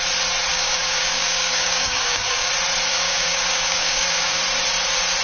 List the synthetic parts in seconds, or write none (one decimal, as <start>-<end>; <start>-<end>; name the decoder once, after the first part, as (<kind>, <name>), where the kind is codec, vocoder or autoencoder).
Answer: 0.5-2.5 (codec, DAC); 2.9-4.4